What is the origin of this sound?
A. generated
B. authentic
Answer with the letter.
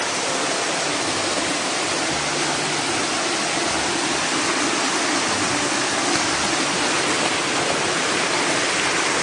B